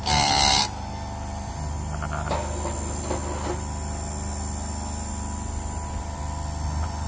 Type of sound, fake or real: real